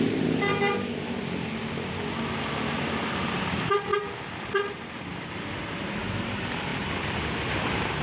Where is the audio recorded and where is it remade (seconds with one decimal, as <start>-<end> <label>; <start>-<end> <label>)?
0.0-0.5 remade; 0.5-3.5 recorded; 3.5-3.9 remade; 3.9-4.4 recorded; 4.4-6.7 remade; 6.7-7.4 recorded; 7.4-8.0 remade